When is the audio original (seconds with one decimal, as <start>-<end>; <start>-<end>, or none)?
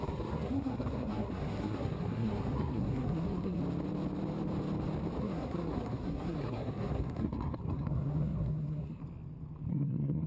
3.6-5.2; 9.0-9.7